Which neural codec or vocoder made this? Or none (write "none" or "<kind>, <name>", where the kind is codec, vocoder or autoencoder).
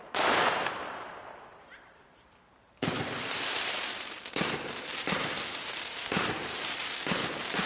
vocoder, BigVGAN v2